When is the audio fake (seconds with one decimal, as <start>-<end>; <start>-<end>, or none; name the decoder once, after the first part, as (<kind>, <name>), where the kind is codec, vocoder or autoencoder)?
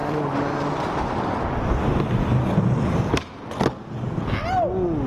none